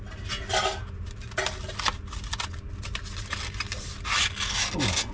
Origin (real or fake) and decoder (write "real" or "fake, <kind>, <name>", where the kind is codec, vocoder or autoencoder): real